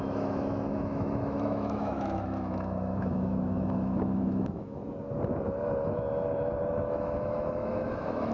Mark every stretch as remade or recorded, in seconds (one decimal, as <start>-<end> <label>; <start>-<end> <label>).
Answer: 0.0-4.8 remade; 4.8-6.7 recorded; 6.7-8.3 remade